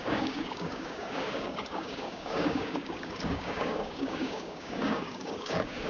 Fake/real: fake